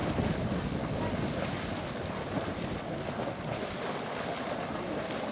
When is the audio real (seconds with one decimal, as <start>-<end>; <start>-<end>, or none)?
0.0-5.3